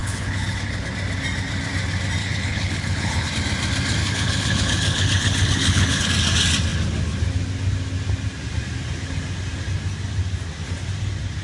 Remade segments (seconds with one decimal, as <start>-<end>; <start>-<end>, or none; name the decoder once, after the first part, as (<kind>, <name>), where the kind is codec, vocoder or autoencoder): 0.0-0.9 (codec, HILCodec); 2.2-3.3; 4.0-6.1